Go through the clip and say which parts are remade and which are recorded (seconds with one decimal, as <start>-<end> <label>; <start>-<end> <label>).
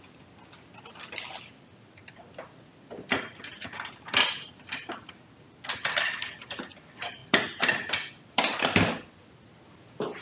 0.0-10.2 recorded